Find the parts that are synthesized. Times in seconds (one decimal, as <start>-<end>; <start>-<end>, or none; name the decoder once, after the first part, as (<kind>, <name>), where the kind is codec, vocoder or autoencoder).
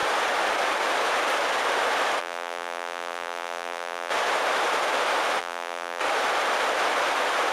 2.2-4.1 (vocoder, BigVGAN v2); 5.4-6.0